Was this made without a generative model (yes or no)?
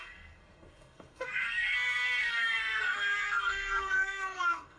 no